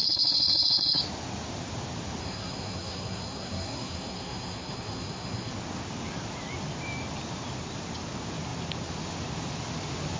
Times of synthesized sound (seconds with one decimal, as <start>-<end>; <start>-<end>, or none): 0.0-1.0; 2.2-5.5